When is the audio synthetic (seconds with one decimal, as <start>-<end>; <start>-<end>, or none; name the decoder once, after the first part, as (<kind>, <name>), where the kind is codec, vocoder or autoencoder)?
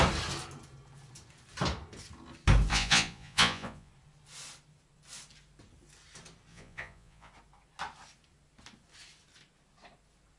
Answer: 2.7-3.9 (vocoder, Vocos); 6.5-7.3